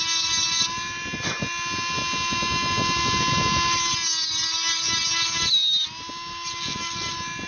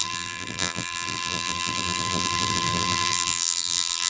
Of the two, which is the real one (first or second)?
first